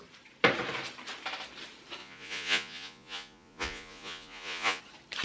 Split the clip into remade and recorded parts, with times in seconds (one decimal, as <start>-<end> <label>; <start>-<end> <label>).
0.0-2.0 recorded; 2.0-4.8 remade; 4.8-5.2 recorded

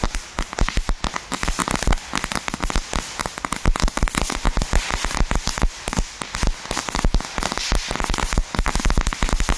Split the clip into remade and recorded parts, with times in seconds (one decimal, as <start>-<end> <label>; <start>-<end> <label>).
0.0-9.6 recorded

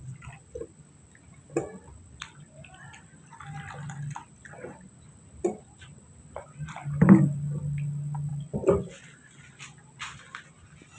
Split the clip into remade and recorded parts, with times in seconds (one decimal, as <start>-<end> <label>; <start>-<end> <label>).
0.0-11.0 recorded

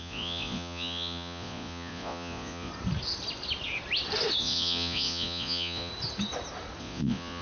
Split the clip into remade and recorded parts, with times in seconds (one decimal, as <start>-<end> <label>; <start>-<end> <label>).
0.0-2.7 remade; 2.7-4.4 recorded; 4.4-5.9 remade; 5.9-6.8 recorded; 6.8-7.4 remade

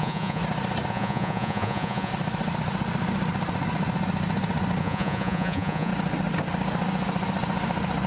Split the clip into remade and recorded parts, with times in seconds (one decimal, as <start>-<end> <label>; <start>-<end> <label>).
0.0-0.4 remade; 0.4-0.9 recorded; 0.9-2.1 remade; 2.1-4.8 recorded; 4.8-5.9 remade; 5.9-8.1 recorded

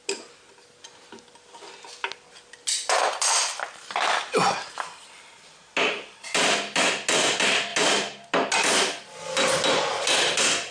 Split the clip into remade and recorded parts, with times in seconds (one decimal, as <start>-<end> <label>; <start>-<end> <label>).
0.0-10.7 recorded